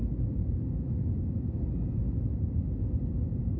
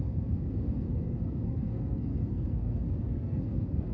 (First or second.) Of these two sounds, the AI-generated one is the second